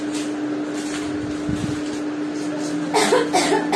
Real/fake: real